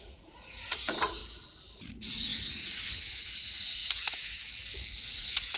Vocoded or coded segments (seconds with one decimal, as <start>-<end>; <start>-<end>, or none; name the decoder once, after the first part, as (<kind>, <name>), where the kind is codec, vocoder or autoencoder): 0.0-1.2 (vocoder, Vocos); 1.8-3.8; 4.9-5.6